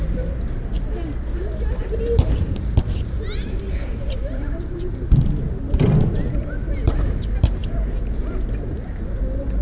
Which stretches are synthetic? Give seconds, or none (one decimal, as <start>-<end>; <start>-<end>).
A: 0.0-1.1; 1.7-9.6